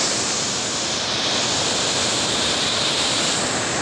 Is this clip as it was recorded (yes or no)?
yes